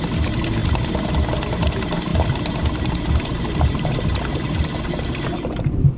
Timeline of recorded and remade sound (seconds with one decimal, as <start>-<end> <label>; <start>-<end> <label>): 0.0-0.6 recorded; 0.6-1.3 remade; 1.3-2.1 recorded; 2.1-6.0 remade